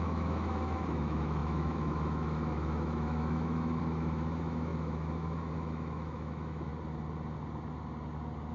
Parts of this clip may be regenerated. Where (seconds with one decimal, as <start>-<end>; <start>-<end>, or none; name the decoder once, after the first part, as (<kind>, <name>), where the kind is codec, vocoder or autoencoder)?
0.0-6.7 (autoencoder, DAC-VAE)